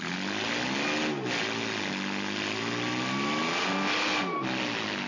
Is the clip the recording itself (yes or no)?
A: yes